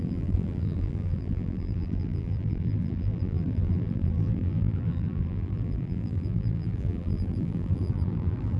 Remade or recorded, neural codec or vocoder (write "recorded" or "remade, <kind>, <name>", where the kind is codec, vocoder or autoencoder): remade, vocoder, BigVGAN v2